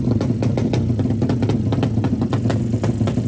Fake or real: real